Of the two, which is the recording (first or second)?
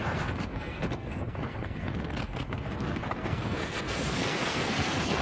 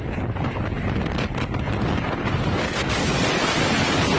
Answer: second